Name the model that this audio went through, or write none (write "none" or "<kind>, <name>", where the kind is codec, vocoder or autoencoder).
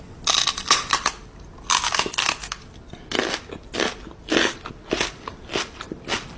none